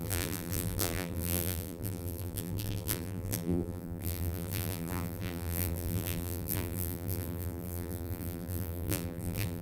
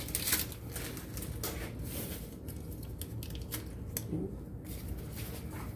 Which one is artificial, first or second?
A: first